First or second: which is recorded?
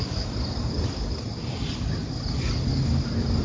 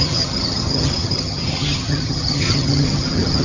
first